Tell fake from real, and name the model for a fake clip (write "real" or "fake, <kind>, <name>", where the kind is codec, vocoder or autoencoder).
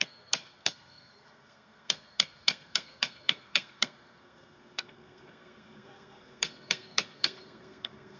fake, codec, SNAC